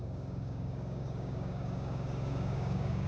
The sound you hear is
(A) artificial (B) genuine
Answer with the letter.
A